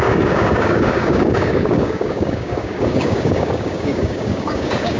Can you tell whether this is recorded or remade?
remade